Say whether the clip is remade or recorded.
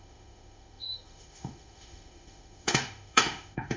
remade